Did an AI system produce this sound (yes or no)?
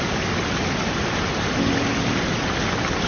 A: no